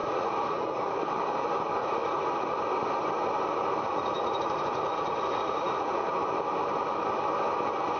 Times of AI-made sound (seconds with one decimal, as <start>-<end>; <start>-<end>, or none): 0.0-1.0; 1.8-2.6; 3.9-6.1